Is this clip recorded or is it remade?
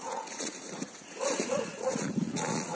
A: remade